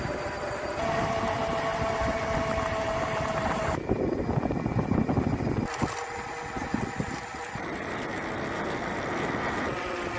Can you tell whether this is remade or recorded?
recorded